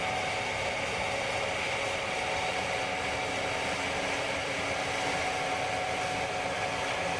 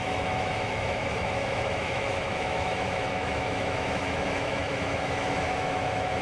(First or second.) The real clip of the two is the first